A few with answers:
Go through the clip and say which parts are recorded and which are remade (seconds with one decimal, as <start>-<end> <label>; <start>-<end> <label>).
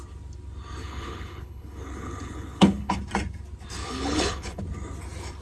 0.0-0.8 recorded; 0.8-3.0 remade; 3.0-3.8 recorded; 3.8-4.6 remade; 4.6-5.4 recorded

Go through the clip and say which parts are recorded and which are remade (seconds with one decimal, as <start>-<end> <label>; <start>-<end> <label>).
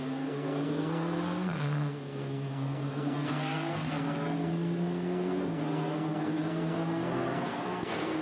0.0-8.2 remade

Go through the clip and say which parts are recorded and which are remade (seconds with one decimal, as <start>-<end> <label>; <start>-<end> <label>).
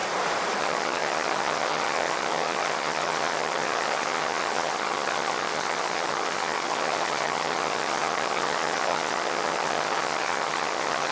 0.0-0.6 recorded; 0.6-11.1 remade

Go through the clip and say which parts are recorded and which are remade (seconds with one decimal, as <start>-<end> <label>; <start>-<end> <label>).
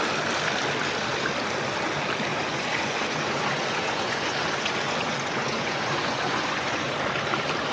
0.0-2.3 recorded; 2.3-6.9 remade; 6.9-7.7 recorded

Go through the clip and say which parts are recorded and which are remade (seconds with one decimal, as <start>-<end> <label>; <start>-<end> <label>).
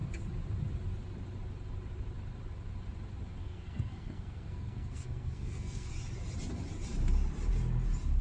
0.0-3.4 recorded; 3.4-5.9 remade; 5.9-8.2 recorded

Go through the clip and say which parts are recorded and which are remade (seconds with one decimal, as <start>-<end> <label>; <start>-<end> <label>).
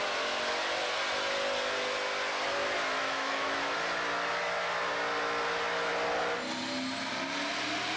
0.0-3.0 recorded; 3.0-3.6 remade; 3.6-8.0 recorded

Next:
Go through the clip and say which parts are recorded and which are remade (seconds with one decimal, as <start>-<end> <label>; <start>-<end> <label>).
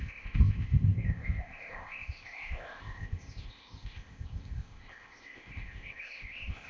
0.0-6.7 remade